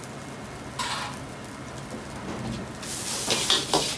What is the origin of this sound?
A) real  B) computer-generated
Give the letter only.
A